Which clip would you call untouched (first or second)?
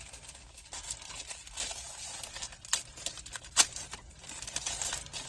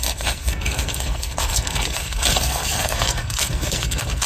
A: first